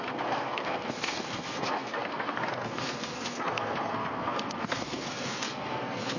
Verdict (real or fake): fake